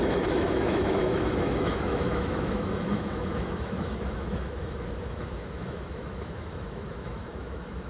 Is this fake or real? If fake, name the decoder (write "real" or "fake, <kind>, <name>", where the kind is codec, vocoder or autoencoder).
fake, autoencoder, DAC-VAE